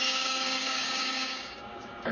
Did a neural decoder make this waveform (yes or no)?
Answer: yes